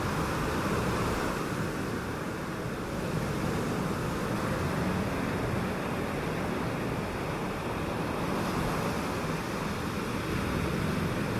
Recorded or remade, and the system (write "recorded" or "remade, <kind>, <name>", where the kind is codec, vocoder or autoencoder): recorded